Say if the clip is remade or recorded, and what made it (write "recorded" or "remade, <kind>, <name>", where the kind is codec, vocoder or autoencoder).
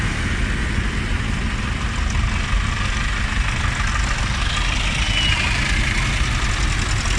recorded